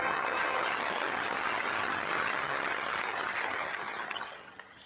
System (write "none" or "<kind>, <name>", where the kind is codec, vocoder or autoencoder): vocoder, HiFi-GAN